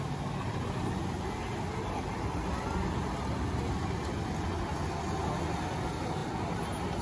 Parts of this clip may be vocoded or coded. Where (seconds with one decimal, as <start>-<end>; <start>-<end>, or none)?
none